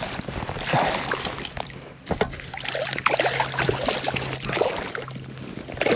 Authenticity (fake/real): real